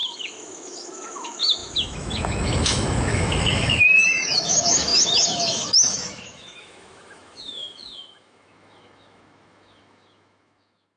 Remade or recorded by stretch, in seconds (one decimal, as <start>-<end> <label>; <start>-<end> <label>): 0.0-11.0 remade